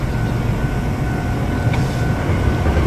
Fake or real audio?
real